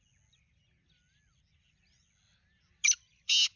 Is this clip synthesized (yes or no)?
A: no